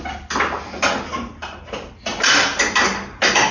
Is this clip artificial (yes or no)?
no